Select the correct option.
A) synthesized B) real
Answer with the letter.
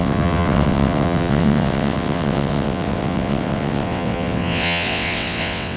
A